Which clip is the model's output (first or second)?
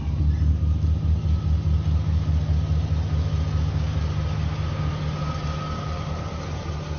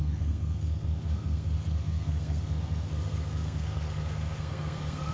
second